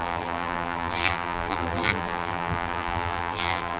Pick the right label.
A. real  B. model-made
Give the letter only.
B